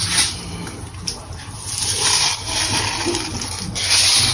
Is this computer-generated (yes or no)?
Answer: no